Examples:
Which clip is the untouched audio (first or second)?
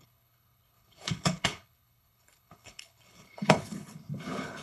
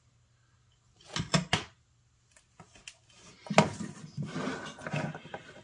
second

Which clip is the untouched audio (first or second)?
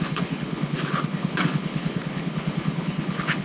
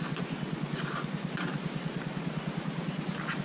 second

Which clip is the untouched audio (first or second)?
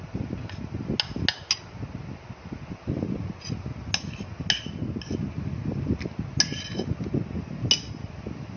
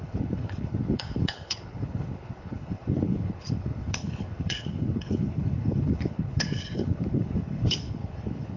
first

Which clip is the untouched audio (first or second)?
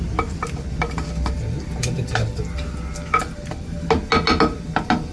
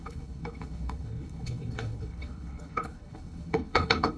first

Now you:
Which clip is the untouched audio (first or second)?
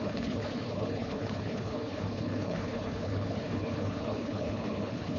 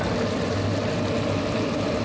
second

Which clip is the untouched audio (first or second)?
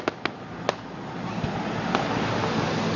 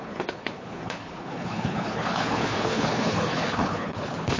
first